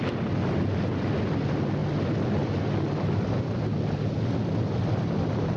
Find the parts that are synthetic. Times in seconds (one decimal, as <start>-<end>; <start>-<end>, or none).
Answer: none